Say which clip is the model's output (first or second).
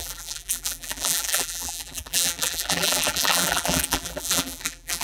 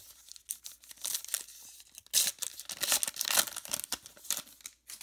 first